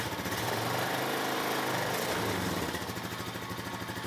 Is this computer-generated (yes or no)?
no